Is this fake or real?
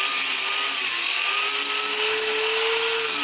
real